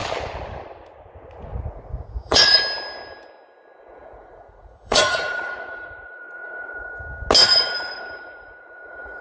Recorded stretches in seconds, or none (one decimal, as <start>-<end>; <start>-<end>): 0.0-1.5; 2.6-3.9; 6.9-7.4